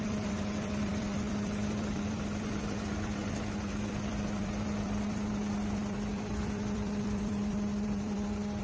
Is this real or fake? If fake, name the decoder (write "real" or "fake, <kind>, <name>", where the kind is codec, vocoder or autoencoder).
fake, vocoder, BigVGAN v2